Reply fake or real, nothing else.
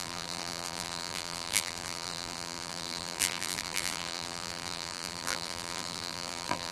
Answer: fake